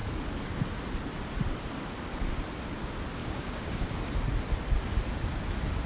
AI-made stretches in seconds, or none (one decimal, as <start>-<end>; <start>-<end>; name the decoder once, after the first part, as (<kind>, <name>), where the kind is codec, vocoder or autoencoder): 3.2-3.9 (codec, DAC)